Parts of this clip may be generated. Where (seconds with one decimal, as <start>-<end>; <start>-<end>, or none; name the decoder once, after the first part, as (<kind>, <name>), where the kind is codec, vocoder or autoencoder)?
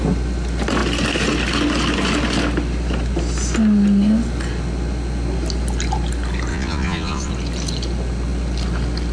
6.5-7.3 (vocoder, Vocos)